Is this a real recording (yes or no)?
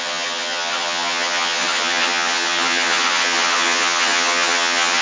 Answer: no